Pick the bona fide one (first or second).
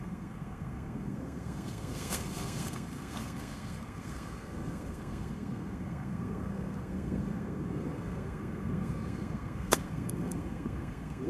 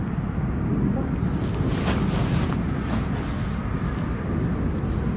second